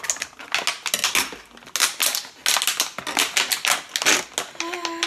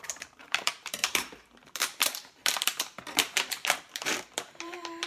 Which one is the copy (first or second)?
second